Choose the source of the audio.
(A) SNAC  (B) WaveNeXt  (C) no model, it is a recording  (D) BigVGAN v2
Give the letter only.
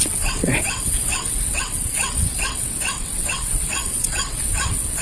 B